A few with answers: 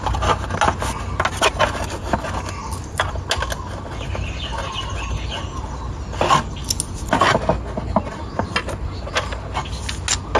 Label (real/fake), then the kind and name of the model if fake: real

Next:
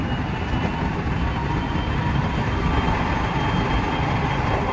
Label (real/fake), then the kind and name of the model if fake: real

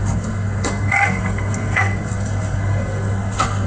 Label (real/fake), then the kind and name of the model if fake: fake, codec, SNAC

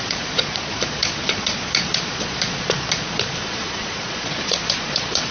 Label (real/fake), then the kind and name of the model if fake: fake, vocoder, Vocos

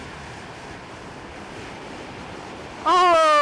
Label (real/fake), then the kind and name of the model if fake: real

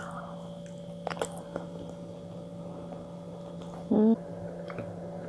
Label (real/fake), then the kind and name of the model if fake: real